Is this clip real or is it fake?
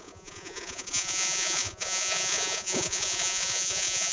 fake